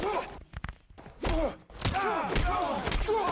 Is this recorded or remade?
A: recorded